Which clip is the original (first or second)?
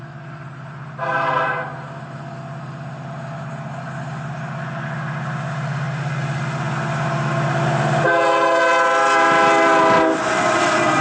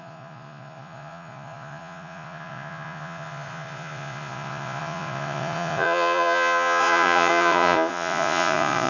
first